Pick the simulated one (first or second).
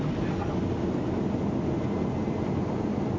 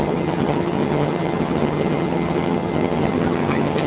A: second